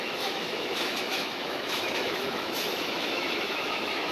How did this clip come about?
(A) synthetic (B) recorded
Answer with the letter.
A